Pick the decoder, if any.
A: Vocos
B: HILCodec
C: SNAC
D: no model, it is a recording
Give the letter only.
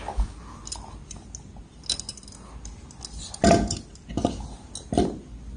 D